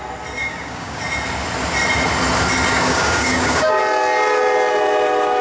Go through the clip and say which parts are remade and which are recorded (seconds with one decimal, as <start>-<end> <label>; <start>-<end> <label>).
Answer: 0.0-0.4 recorded; 0.4-1.0 remade; 1.0-2.7 recorded; 2.7-3.8 remade; 3.8-5.4 recorded